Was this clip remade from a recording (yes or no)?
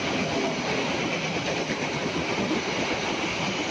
no